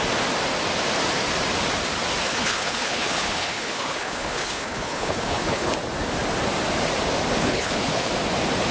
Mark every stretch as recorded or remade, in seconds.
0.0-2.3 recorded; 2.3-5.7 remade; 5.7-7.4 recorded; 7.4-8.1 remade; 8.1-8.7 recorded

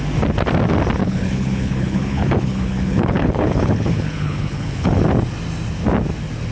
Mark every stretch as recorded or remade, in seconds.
0.0-1.0 recorded; 1.0-4.9 remade; 4.9-6.5 recorded

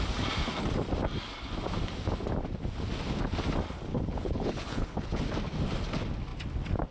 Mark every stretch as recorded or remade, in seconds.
0.0-3.9 recorded; 3.9-5.2 remade; 5.2-6.9 recorded